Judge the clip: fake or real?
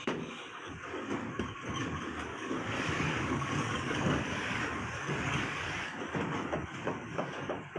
fake